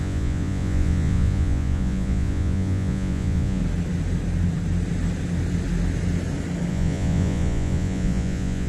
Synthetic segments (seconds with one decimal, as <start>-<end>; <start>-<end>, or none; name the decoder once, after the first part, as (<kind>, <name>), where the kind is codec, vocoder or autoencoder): 0.0-3.6 (vocoder, Vocos); 6.7-8.7